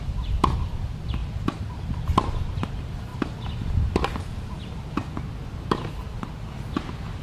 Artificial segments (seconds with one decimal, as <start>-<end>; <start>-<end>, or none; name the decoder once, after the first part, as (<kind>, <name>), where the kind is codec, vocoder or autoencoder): 1.2-2.0 (vocoder, BigVGAN v2); 3.1-4.8